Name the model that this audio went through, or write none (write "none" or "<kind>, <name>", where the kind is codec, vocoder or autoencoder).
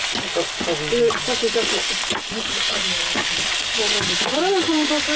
none